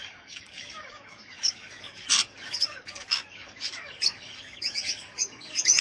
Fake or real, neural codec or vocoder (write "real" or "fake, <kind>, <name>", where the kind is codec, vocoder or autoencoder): fake, codec, DAC